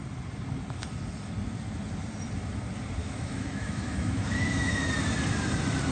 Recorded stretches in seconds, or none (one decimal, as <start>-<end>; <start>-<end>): 0.0-3.0; 4.9-5.9